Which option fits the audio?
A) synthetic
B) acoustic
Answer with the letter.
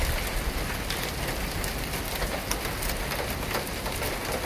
B